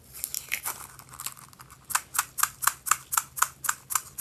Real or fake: real